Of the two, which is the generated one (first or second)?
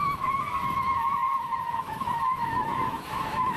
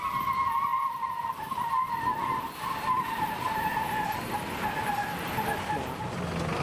first